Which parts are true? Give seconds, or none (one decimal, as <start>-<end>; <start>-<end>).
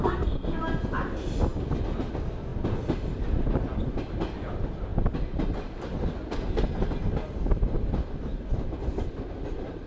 0.6-9.9